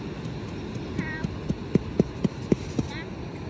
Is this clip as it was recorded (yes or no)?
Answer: yes